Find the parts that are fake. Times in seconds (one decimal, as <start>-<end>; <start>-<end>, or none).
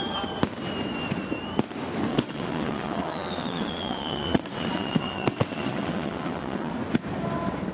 2.1-6.7